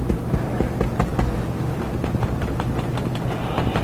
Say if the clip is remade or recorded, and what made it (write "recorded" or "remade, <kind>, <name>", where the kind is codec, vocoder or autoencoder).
recorded